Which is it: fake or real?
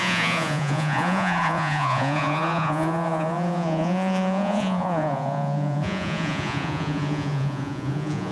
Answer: fake